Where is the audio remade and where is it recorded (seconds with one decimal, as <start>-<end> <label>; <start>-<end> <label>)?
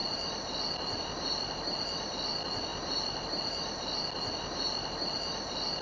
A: 0.0-5.8 recorded